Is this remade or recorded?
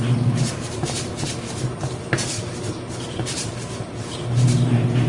remade